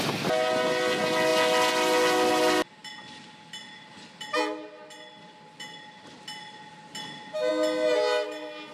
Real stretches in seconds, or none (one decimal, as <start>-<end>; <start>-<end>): 0.0-8.7